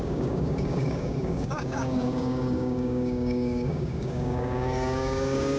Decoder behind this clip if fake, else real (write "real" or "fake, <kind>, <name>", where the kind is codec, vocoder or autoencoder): fake, codec, DAC